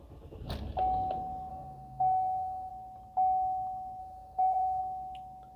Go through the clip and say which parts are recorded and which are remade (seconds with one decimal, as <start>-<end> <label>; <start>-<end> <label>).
0.0-1.5 recorded; 1.5-2.7 remade; 2.7-4.0 recorded; 4.0-4.8 remade; 4.8-5.6 recorded